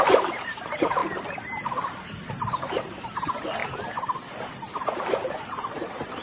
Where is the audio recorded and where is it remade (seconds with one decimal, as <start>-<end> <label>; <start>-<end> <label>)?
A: 0.0-1.0 remade; 1.0-2.3 recorded; 2.3-3.6 remade; 3.6-5.0 recorded; 5.0-6.2 remade